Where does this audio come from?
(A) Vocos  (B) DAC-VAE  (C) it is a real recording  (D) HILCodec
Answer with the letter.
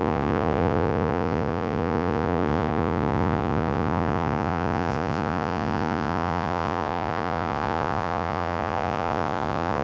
A